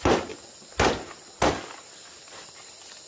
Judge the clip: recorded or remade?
recorded